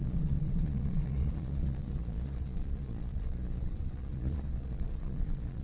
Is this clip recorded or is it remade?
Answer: remade